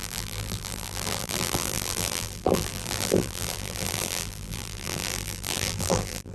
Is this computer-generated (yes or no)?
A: yes